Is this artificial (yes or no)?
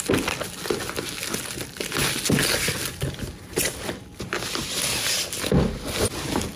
no